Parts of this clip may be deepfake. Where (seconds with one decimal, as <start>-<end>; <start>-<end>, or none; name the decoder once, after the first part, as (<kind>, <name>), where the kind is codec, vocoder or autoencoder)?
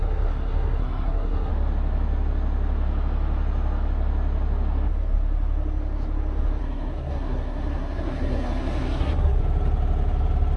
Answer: 0.0-1.5 (codec, SNAC); 6.6-9.4